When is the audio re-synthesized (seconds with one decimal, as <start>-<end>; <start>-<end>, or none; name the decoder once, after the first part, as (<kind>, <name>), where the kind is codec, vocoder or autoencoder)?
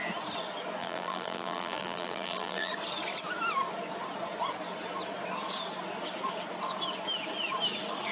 0.8-2.7 (vocoder, BigVGAN v2)